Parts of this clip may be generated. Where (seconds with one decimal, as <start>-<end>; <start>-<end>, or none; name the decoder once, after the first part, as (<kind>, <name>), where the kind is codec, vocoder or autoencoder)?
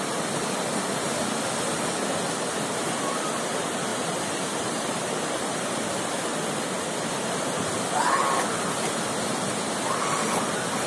3.9-5.9 (vocoder, BigVGAN v2)